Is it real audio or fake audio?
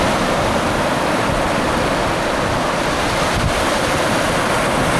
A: real